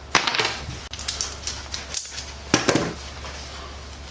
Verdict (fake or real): real